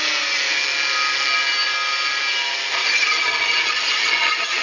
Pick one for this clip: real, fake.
real